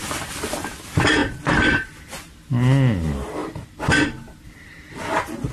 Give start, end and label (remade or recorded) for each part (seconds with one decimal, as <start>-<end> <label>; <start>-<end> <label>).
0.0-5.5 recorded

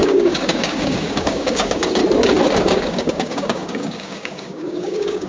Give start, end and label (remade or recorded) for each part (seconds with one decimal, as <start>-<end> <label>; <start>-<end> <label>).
0.0-2.0 remade; 2.0-2.6 recorded; 2.6-5.3 remade

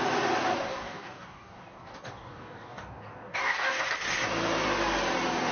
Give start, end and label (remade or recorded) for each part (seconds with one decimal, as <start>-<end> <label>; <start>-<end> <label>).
0.0-0.7 recorded; 0.7-3.8 remade; 3.8-5.5 recorded

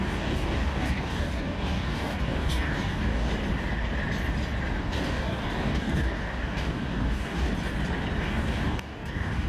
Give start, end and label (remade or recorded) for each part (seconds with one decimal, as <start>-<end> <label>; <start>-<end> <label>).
0.0-3.3 remade; 3.3-4.8 recorded; 4.8-7.5 remade; 7.5-8.2 recorded; 8.2-9.5 remade

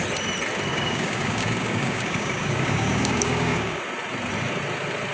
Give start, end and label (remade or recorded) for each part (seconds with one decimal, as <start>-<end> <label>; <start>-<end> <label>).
0.0-0.7 recorded; 0.7-3.8 remade; 3.8-5.1 recorded